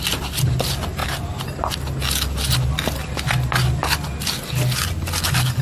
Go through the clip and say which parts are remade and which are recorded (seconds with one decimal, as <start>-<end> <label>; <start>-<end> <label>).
0.0-5.6 recorded

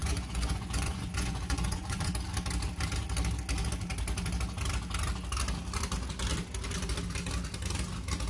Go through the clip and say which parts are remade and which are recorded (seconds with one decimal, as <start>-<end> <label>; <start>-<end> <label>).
0.0-2.1 remade; 2.1-8.3 recorded

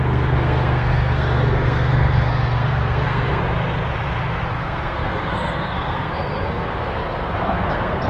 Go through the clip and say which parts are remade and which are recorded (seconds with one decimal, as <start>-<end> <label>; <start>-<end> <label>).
0.0-3.4 remade; 3.4-4.5 recorded; 4.5-8.1 remade

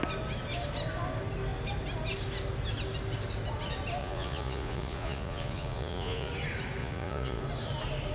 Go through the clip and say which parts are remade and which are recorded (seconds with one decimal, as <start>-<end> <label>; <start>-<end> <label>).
0.0-4.0 recorded; 4.0-6.3 remade; 6.3-6.8 recorded; 6.8-7.4 remade; 7.4-8.1 recorded